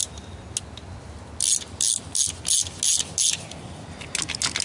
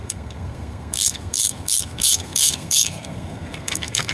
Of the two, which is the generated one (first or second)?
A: second